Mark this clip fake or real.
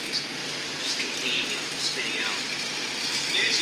fake